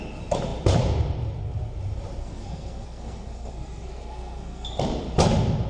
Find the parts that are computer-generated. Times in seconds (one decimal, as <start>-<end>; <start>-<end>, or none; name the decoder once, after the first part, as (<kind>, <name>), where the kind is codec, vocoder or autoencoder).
2.2-4.7 (codec, SNAC)